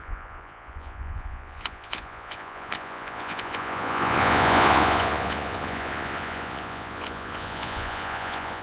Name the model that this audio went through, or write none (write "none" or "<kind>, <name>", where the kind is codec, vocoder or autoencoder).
vocoder, Vocos